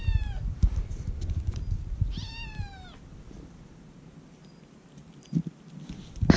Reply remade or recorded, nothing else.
recorded